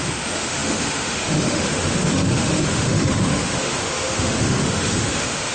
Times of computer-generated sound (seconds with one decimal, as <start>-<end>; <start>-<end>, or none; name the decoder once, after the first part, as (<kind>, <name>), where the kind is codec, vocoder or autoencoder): 0.0-5.5 (autoencoder, DAC-VAE)